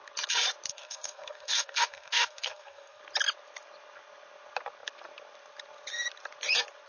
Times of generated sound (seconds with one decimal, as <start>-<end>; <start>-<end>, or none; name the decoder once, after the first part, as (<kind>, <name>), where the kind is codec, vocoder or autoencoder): 0.7-3.0 (codec, SNAC)